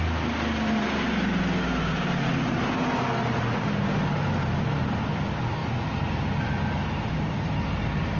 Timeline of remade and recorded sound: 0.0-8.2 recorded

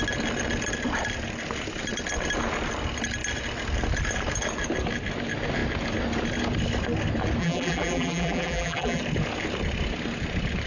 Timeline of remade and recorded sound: 0.0-7.4 recorded; 7.4-9.0 remade; 9.0-10.7 recorded

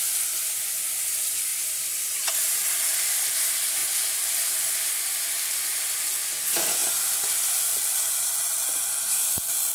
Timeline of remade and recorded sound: 0.0-6.8 recorded; 6.8-7.5 remade; 7.5-9.7 recorded

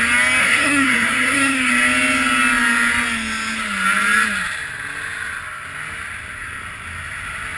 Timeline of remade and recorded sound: 0.0-0.4 recorded; 0.4-1.7 remade; 1.7-7.6 recorded